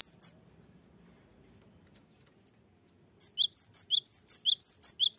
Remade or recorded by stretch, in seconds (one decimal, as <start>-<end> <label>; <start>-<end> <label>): 0.0-5.2 recorded

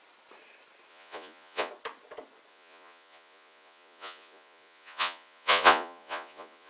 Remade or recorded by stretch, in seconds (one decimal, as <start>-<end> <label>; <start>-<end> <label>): 0.0-0.9 recorded; 0.9-1.7 remade; 1.7-2.5 recorded; 2.5-6.7 remade

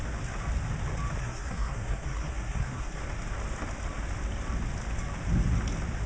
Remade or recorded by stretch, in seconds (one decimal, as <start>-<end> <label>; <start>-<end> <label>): 0.0-1.2 recorded; 1.2-3.0 remade; 3.0-6.1 recorded